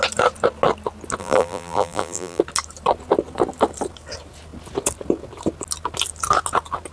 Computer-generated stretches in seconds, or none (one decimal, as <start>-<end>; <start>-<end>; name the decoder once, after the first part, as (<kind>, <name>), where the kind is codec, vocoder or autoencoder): 1.2-2.4 (vocoder, BigVGAN v2)